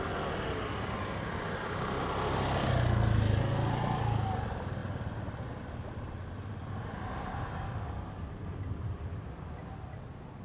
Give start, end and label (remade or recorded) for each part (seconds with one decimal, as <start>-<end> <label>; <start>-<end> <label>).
0.0-10.4 recorded